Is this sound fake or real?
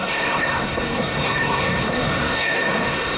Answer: fake